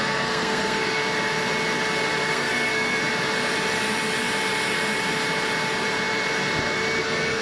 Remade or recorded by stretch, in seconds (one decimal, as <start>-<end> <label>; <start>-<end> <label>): 0.0-1.0 remade; 1.0-2.3 recorded; 2.3-3.0 remade; 3.0-7.0 recorded; 7.0-7.4 remade